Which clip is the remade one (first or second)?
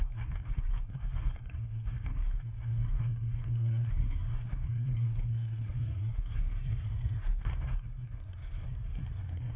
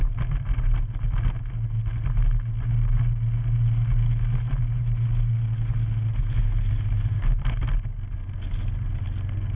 first